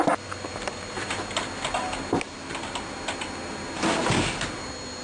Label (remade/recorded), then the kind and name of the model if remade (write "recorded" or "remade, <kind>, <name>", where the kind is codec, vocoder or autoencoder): recorded